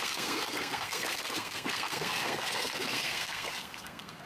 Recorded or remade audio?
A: remade